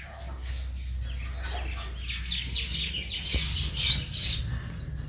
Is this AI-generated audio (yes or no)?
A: no